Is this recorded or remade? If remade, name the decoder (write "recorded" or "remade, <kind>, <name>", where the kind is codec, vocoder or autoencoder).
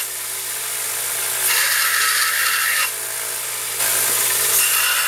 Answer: recorded